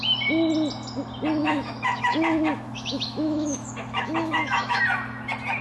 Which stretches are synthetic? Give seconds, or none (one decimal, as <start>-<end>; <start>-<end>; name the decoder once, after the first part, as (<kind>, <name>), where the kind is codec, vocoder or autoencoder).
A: 1.4-4.8 (autoencoder, DAC-VAE)